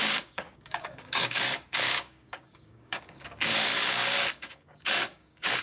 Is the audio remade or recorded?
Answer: remade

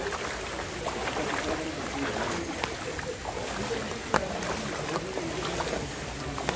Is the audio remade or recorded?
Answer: recorded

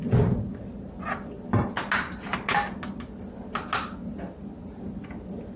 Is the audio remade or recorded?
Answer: recorded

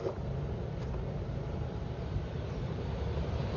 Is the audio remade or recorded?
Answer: remade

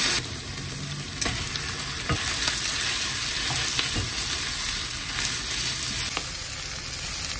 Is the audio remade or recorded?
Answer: recorded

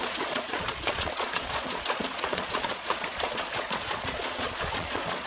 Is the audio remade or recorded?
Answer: remade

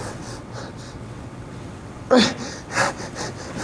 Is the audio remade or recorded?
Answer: remade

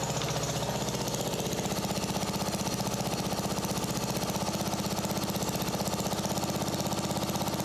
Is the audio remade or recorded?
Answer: recorded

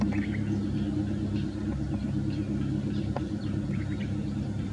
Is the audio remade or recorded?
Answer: recorded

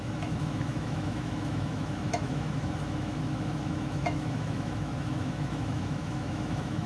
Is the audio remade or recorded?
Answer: remade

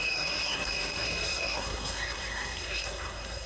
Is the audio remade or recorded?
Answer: remade